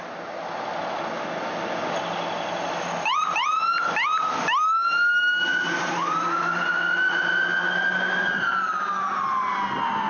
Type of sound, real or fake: real